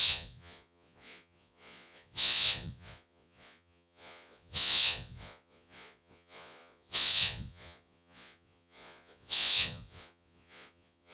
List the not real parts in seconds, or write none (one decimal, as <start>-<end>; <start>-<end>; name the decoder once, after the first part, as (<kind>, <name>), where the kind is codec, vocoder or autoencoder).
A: 0.0-11.1 (vocoder, Vocos)